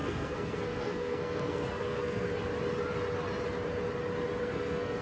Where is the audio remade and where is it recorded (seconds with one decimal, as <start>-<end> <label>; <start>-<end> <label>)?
0.0-2.3 remade; 2.3-4.4 recorded; 4.4-5.0 remade